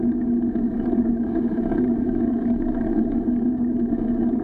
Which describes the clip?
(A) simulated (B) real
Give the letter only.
A